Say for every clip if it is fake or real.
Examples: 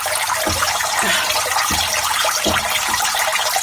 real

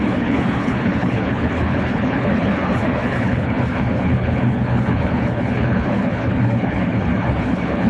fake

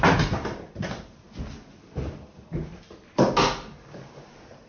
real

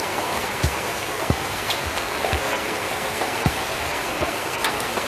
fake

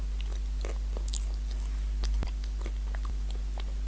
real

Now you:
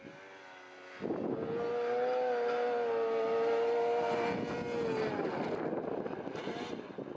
real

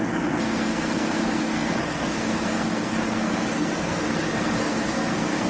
fake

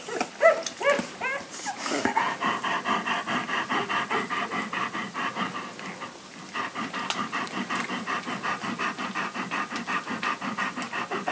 real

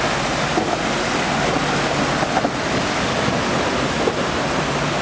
real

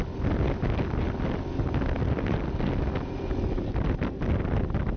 real